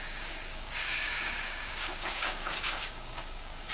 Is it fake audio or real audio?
fake